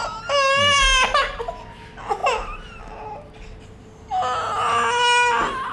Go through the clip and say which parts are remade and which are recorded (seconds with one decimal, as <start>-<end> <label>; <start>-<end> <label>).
0.0-2.2 recorded; 2.2-2.8 remade; 2.8-5.7 recorded